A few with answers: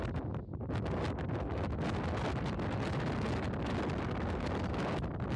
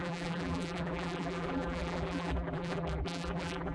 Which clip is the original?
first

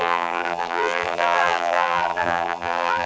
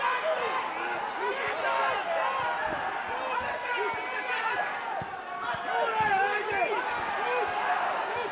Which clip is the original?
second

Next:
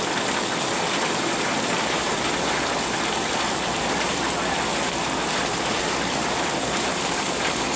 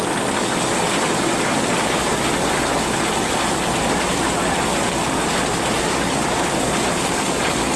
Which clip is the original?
second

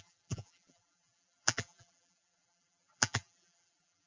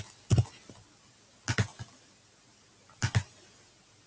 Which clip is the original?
second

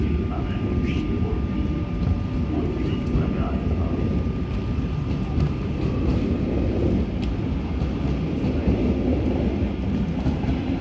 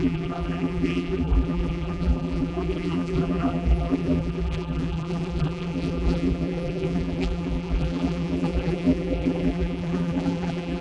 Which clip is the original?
first